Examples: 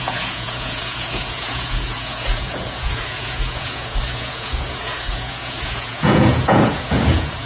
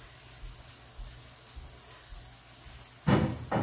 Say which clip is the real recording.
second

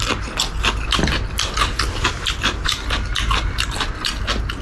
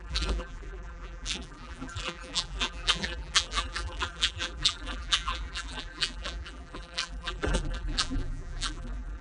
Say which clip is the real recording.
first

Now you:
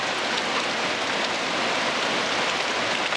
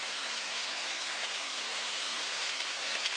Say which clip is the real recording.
first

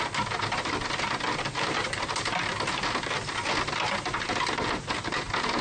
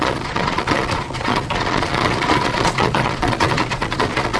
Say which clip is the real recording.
first